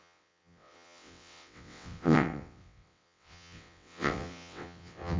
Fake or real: fake